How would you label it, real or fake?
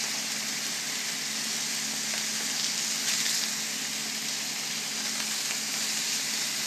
real